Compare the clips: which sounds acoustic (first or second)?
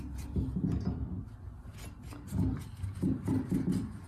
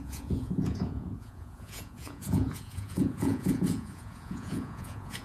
first